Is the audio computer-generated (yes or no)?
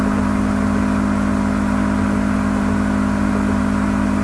no